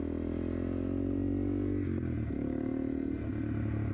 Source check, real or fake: real